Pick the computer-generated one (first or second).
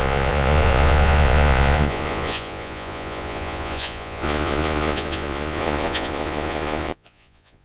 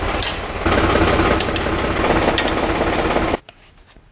first